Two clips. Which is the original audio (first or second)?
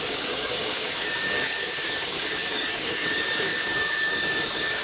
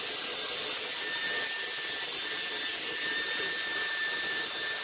second